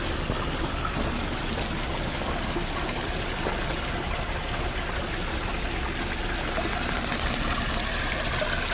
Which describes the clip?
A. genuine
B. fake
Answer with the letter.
A